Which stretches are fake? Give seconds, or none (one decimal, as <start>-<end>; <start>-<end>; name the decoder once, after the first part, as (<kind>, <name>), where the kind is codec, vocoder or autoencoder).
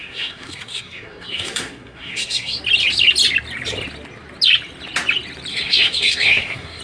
0.0-2.6 (codec, SNAC); 5.5-6.8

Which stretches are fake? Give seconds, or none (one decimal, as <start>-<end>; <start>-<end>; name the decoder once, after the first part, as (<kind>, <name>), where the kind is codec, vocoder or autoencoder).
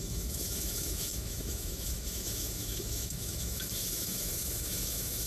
0.0-5.3 (autoencoder, DAC-VAE)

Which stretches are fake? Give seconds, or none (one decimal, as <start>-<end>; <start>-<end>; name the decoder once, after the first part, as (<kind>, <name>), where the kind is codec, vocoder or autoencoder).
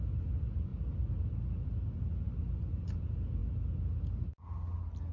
none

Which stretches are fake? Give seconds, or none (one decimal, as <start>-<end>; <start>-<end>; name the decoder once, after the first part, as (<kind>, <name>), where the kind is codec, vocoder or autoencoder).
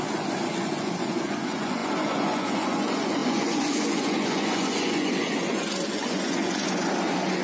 0.0-7.4 (vocoder, Vocos)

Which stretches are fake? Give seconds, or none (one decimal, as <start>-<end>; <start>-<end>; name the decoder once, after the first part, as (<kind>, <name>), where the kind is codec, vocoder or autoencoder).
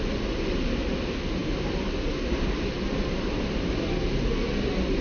none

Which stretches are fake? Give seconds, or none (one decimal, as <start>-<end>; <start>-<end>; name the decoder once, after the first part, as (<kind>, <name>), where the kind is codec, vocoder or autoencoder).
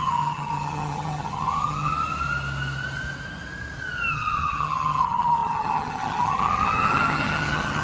0.0-1.9 (vocoder, HiFi-GAN); 4.1-7.8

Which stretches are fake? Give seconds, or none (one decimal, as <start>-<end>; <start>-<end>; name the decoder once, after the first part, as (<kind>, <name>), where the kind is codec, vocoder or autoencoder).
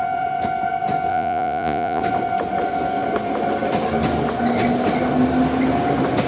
1.1-2.0 (vocoder, Vocos)